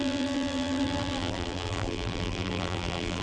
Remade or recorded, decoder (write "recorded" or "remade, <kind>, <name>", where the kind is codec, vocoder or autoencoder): remade, vocoder, BigVGAN v2